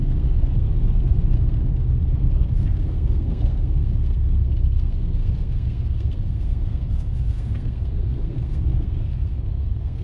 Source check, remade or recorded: remade